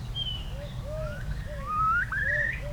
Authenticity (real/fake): fake